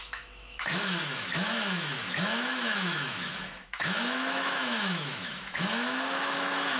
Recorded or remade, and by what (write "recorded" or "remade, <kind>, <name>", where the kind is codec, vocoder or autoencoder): remade, autoencoder, DAC-VAE